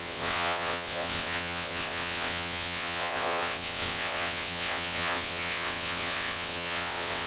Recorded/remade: remade